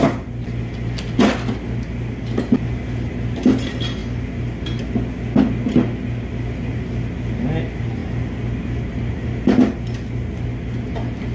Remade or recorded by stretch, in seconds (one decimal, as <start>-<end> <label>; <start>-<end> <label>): 0.0-11.3 recorded